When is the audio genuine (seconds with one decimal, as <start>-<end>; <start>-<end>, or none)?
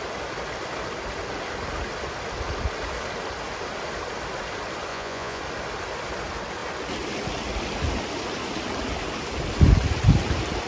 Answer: 0.0-4.9; 5.4-10.7